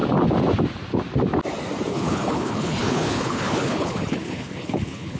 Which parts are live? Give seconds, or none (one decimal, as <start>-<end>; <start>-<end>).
0.0-1.9